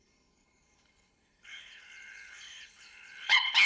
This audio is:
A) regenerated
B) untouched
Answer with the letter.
A